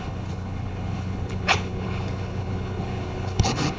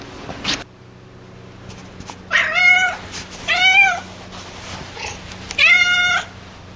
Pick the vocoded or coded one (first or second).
first